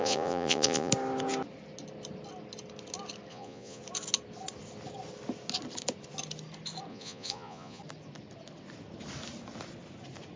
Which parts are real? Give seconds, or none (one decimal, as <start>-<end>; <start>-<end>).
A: 0.9-3.3; 3.8-6.9; 7.8-10.4